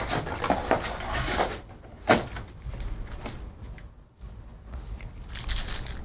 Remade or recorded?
recorded